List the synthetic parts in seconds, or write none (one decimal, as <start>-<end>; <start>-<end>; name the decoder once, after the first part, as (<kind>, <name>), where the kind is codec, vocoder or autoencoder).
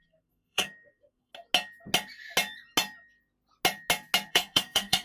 0.0-1.3 (codec, SNAC); 4.3-5.0